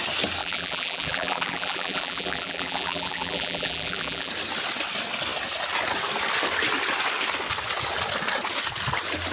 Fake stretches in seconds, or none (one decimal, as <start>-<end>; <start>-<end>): 0.4-4.3